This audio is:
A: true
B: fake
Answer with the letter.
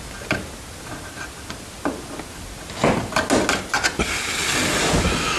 A